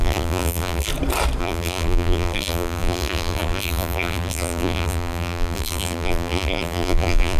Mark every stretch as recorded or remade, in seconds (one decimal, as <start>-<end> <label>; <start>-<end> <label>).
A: 0.0-0.9 remade; 0.9-1.4 recorded; 1.4-7.4 remade

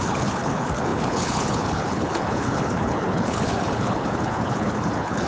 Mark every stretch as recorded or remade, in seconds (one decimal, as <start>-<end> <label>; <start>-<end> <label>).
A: 0.0-5.3 remade

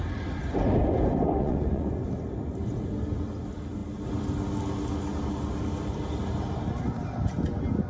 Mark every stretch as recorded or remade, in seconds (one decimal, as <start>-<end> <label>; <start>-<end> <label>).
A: 0.0-1.4 recorded; 1.4-1.9 remade; 1.9-7.9 recorded

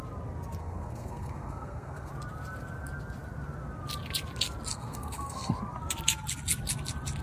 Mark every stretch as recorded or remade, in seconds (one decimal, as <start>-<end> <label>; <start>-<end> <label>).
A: 0.0-0.6 recorded; 0.6-2.1 remade; 2.1-4.7 recorded; 4.7-5.5 remade; 5.5-7.2 recorded

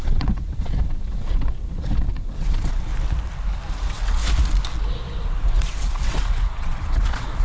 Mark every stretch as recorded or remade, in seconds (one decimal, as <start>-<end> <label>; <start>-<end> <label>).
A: 0.0-2.9 remade; 2.9-3.7 recorded; 3.7-4.2 remade; 4.2-5.2 recorded; 5.2-7.4 remade

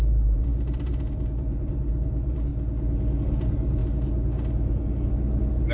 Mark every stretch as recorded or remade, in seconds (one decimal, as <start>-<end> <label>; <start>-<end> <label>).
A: 0.0-2.5 remade; 2.5-3.2 recorded; 3.2-3.8 remade; 3.8-5.7 recorded

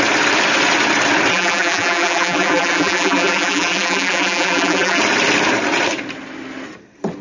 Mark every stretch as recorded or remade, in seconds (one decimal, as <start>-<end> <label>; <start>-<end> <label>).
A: 0.0-1.3 recorded; 1.3-5.0 remade; 5.0-7.2 recorded

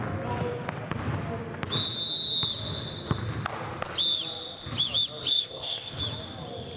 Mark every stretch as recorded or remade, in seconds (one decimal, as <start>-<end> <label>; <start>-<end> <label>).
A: 0.0-5.3 recorded; 5.3-6.0 remade; 6.0-6.8 recorded